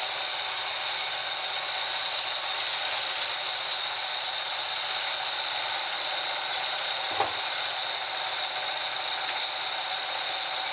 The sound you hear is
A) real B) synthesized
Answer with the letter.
A